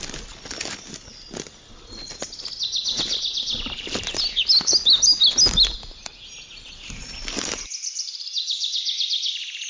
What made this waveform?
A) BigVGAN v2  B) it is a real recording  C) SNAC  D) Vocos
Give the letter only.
B